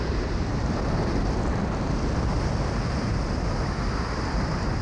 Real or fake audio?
real